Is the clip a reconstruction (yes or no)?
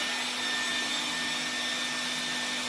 no